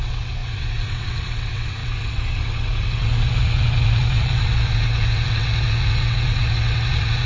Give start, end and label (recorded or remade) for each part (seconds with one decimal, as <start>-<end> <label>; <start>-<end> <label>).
0.0-7.3 remade